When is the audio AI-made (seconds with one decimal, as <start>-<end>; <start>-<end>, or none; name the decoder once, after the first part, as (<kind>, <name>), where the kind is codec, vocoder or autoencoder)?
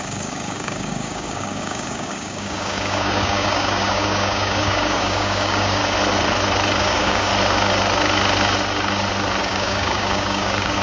0.0-5.8 (codec, DAC); 6.8-7.3; 9.4-10.8